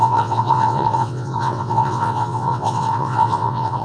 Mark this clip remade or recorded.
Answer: remade